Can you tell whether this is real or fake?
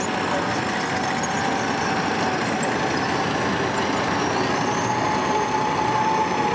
real